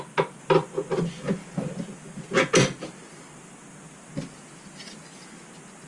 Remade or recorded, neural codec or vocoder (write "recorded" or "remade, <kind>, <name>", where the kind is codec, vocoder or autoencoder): recorded